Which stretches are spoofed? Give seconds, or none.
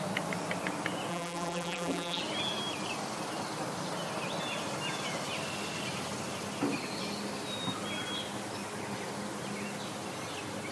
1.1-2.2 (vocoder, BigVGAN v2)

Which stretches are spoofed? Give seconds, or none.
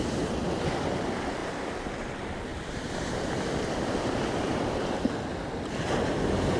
0.0-6.6 (vocoder, BigVGAN v2)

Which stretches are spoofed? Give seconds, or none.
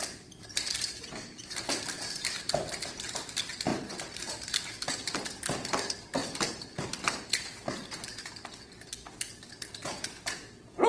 3.7-4.2 (vocoder, BigVGAN v2)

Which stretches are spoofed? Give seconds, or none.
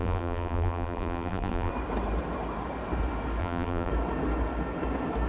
0.0-1.7 (vocoder, BigVGAN v2); 3.4-3.9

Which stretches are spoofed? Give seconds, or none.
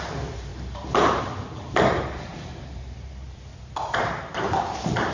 0.0-3.5 (vocoder, BigVGAN v2)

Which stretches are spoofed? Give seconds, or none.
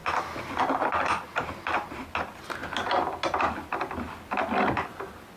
none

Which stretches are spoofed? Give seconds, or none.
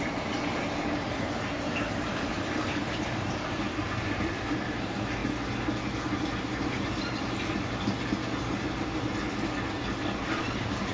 0.0-5.2 (vocoder, BigVGAN v2); 10.4-10.9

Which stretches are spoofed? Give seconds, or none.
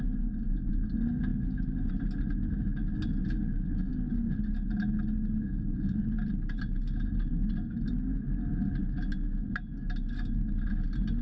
none